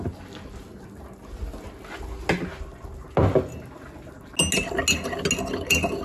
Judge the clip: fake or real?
real